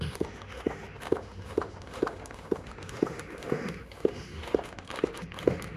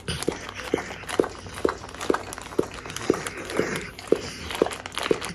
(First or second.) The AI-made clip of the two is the first